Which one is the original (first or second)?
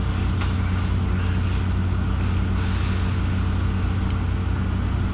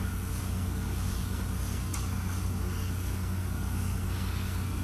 first